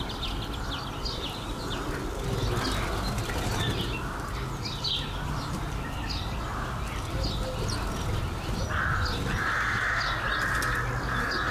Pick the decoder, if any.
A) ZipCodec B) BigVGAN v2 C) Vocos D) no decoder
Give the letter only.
D